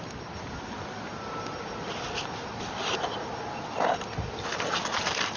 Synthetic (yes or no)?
no